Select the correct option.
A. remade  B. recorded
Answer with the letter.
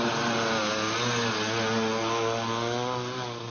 B